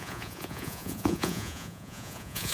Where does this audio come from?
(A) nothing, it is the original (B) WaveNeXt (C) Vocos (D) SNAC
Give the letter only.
C